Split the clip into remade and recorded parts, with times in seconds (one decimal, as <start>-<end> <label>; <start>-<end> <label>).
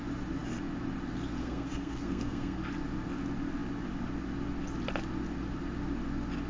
0.0-1.4 recorded; 1.4-2.6 remade; 2.6-6.5 recorded